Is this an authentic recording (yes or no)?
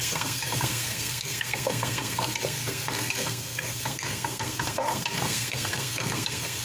no